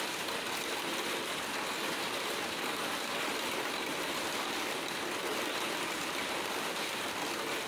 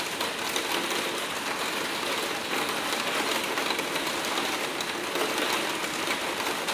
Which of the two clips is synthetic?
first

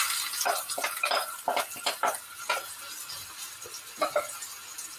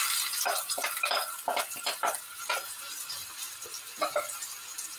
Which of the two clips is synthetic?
second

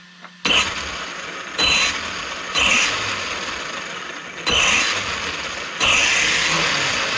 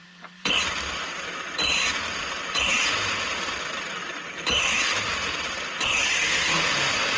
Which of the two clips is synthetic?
second